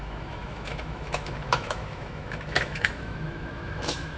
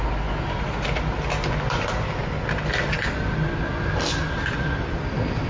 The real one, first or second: second